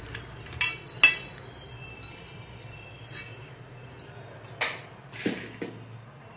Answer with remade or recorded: recorded